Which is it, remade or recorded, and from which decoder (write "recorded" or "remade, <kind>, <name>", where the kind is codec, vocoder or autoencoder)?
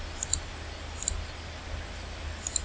recorded